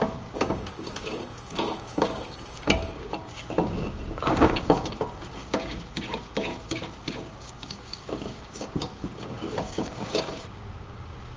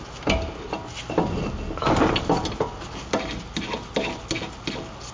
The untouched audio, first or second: second